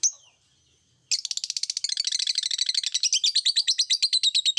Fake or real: real